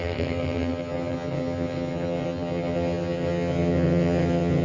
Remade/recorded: remade